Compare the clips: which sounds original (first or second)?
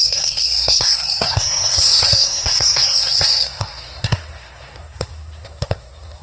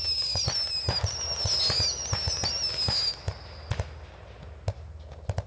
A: second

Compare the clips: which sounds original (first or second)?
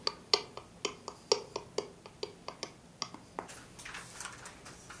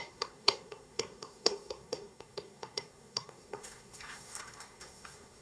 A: first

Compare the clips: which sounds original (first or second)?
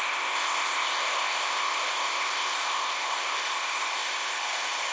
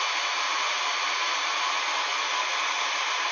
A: second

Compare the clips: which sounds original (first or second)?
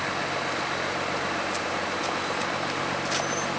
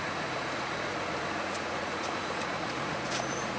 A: first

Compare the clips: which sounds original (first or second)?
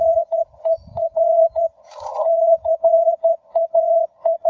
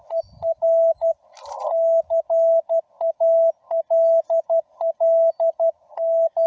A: second